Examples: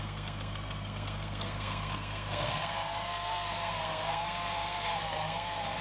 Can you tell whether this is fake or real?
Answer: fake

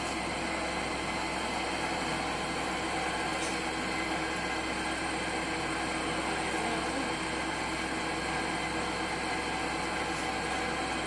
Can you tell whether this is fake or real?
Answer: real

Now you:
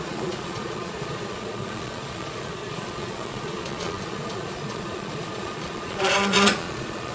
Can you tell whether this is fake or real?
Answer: fake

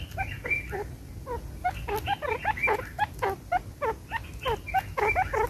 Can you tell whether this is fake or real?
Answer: real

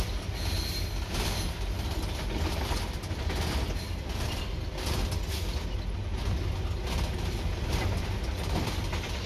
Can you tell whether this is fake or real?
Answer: real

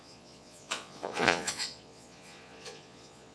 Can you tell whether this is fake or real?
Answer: fake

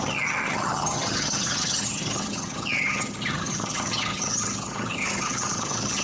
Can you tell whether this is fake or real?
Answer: fake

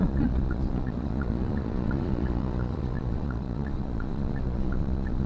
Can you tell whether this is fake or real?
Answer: fake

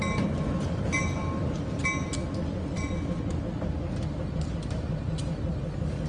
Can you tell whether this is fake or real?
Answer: real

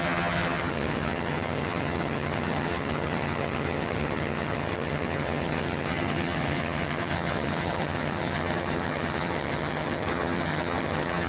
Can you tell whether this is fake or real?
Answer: fake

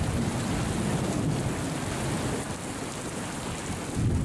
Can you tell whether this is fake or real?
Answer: real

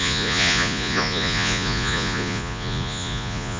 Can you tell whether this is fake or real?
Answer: fake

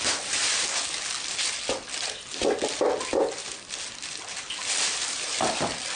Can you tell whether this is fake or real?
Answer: real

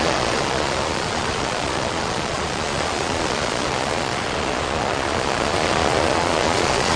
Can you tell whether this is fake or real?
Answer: fake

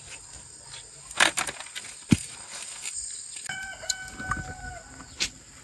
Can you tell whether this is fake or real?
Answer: real